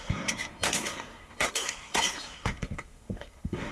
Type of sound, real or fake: fake